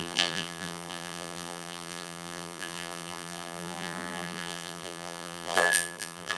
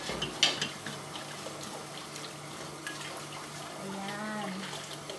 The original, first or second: second